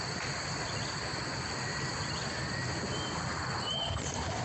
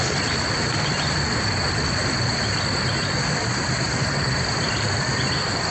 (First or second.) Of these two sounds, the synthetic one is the second